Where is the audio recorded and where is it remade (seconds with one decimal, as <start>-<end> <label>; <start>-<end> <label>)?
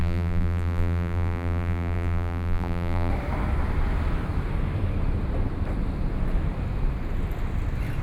0.0-3.1 remade; 3.1-8.0 recorded